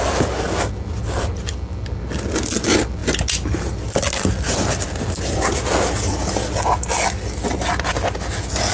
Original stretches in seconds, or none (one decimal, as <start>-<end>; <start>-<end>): 0.0-8.7